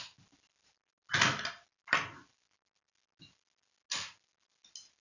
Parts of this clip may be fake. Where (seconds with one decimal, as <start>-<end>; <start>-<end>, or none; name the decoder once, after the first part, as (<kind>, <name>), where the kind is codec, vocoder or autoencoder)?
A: none